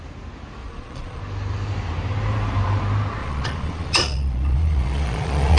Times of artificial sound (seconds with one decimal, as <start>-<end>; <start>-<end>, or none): 0.6-1.2; 3.2-5.6